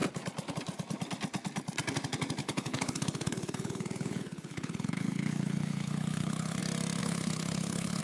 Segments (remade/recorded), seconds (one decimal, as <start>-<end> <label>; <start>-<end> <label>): 0.0-2.4 recorded; 2.4-6.6 remade; 6.6-7.0 recorded; 7.0-8.0 remade